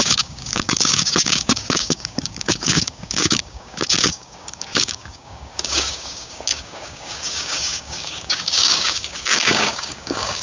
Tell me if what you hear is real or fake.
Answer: fake